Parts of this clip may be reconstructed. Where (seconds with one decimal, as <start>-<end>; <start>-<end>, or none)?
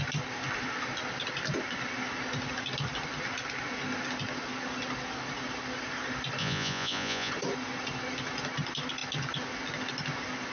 6.4-7.3